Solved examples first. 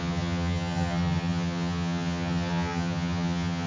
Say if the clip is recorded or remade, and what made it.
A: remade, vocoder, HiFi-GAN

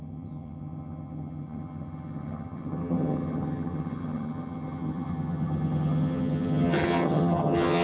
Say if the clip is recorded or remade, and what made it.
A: remade, vocoder, HiFi-GAN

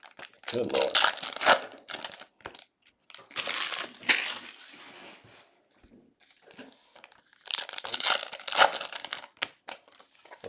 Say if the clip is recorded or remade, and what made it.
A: recorded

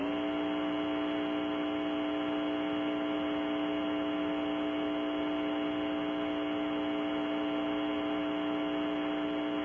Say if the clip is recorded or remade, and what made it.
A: recorded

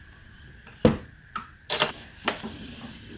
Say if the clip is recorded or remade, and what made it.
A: recorded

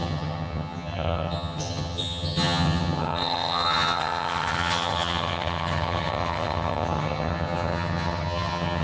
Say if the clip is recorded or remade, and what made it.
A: remade, vocoder, HiFi-GAN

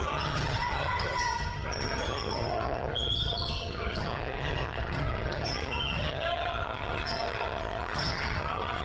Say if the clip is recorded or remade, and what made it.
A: remade, vocoder, HiFi-GAN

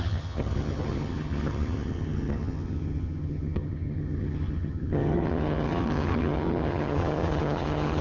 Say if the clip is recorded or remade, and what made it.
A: remade, vocoder, HiFi-GAN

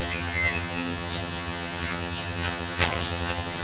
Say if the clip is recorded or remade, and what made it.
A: remade, vocoder, HiFi-GAN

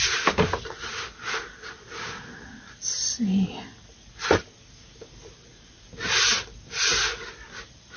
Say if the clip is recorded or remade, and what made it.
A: recorded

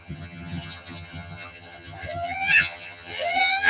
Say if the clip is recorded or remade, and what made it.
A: remade, vocoder, HiFi-GAN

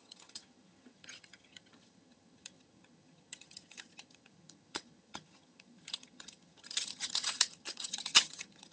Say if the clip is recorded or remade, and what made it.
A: remade, vocoder, HiFi-GAN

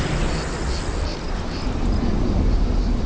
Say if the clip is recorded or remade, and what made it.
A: recorded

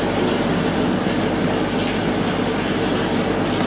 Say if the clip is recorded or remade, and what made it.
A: recorded